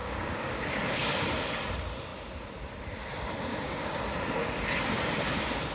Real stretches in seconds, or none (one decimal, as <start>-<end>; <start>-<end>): 0.6-3.5; 4.0-5.7